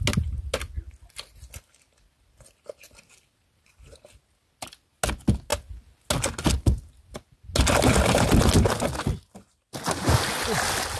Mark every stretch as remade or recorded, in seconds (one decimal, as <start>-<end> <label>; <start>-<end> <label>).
0.0-11.0 recorded